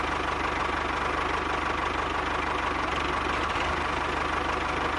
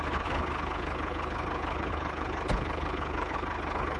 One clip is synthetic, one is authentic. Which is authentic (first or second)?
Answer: first